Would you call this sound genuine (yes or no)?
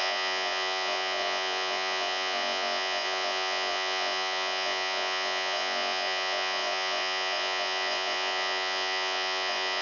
no